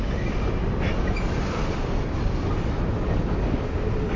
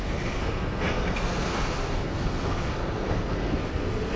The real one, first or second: first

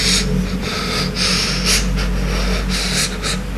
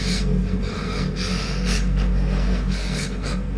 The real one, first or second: first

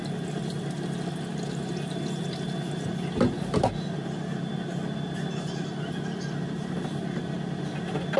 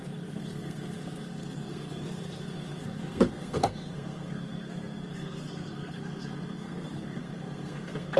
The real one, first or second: first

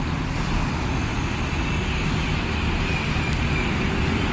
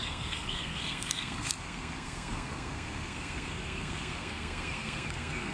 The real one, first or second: first